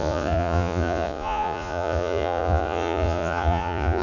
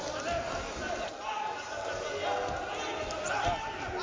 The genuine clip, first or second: second